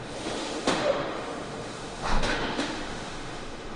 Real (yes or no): no